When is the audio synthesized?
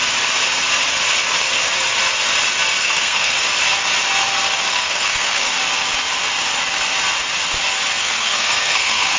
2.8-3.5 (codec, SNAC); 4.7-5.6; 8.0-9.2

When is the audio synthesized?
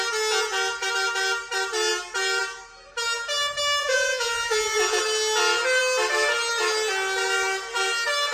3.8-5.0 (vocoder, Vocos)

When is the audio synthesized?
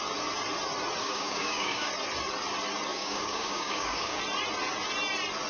1.0-1.9 (codec, DAC); 2.9-4.2